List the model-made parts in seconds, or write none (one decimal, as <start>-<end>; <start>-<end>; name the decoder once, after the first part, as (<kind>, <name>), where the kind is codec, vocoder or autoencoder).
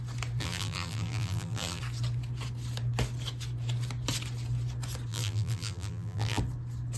0.4-1.8 (vocoder, BigVGAN v2); 5.1-6.4